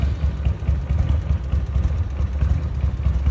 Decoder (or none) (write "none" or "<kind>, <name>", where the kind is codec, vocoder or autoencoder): none